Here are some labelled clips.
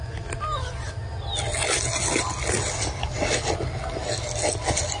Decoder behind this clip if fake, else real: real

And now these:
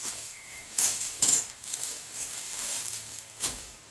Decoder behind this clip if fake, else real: fake, codec, DAC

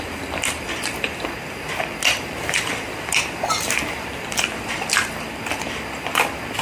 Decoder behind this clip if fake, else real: fake, vocoder, BigVGAN v2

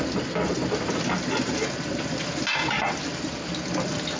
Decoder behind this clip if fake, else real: real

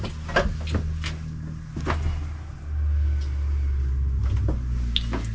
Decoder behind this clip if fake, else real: real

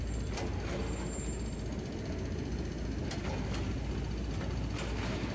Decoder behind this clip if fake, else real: real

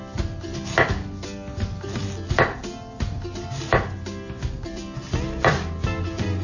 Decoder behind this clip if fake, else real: real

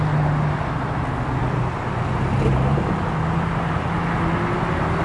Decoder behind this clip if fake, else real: real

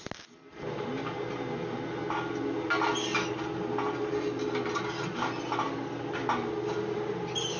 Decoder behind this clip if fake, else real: real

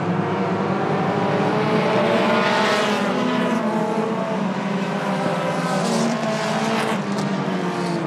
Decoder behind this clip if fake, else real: real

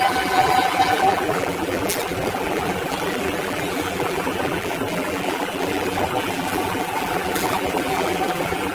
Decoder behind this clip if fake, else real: fake, vocoder, BigVGAN v2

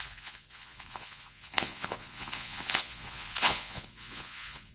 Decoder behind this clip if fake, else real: fake, vocoder, Vocos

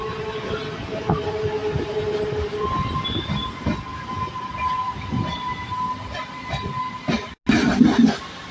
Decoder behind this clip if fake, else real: real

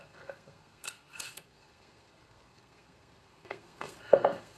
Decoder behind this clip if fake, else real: fake, codec, SNAC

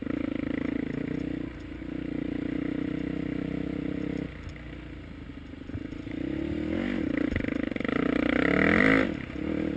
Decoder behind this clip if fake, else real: real